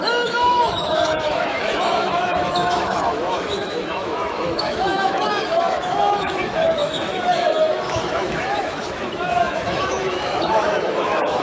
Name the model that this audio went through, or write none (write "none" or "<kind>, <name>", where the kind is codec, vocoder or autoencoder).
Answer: autoencoder, DAC-VAE